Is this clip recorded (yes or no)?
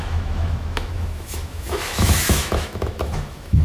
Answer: no